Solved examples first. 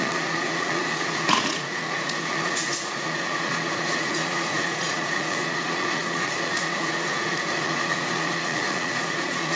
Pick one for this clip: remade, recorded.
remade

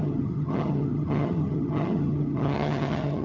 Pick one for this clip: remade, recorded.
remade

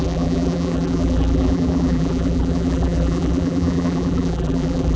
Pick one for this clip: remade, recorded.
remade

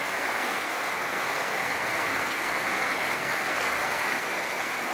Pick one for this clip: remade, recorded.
remade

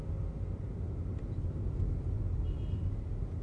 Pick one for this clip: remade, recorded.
recorded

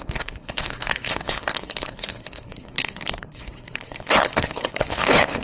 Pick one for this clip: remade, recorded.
remade